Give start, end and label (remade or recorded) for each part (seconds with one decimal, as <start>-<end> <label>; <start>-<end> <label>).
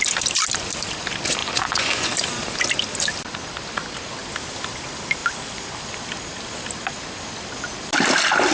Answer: 0.0-1.4 recorded; 1.4-2.1 remade; 2.1-8.5 recorded